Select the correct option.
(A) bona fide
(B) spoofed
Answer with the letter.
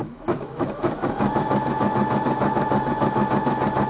B